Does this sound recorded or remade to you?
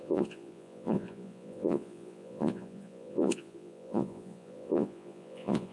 remade